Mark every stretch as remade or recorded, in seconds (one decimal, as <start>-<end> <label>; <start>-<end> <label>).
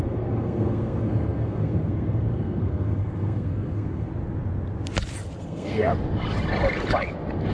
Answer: 0.0-4.1 remade; 4.1-5.4 recorded; 5.4-5.9 remade; 5.9-7.5 recorded